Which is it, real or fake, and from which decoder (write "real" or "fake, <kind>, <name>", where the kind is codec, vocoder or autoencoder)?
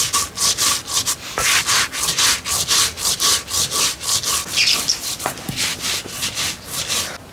real